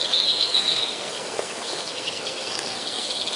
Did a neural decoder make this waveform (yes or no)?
yes